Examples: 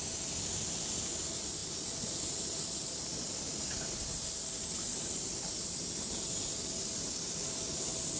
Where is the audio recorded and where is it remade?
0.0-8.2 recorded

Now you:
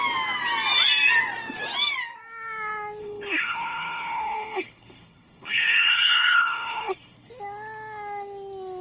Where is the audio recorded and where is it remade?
0.0-3.0 recorded; 3.0-7.3 remade; 7.3-8.8 recorded